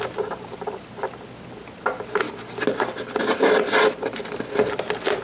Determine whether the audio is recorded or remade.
recorded